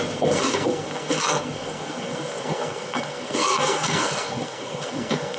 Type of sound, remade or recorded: remade